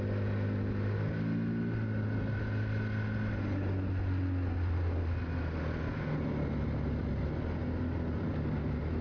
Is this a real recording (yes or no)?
yes